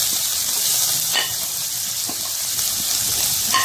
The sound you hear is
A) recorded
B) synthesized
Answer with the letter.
A